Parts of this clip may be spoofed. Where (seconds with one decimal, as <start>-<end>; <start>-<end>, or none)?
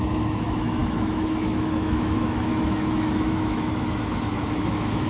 0.0-5.1